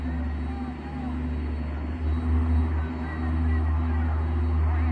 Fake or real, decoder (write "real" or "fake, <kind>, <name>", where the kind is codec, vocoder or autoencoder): real